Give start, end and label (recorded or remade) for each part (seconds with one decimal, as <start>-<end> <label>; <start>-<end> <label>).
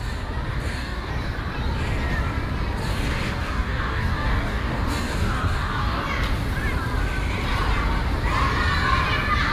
0.0-0.5 recorded; 0.5-1.1 remade; 1.1-2.9 recorded; 2.9-6.0 remade; 6.0-9.5 recorded